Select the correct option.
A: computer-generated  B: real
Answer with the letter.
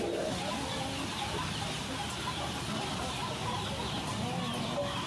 B